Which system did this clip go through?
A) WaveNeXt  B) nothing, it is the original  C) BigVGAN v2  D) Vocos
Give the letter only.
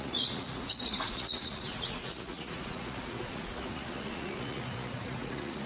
D